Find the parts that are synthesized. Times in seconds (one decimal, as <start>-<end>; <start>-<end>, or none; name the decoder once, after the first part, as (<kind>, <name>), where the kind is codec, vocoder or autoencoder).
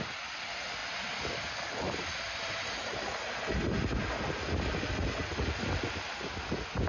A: none